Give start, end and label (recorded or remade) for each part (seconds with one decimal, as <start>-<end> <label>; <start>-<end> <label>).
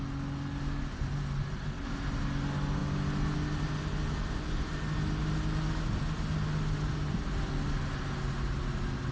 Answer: 0.0-9.1 recorded